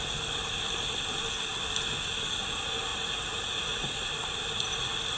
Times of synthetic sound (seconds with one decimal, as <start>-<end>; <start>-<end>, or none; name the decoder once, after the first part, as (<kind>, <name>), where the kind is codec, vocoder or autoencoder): 2.9-4.1 (vocoder, Vocos)